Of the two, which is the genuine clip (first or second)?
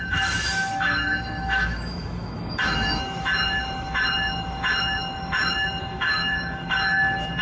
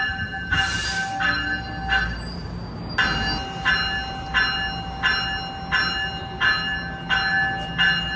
second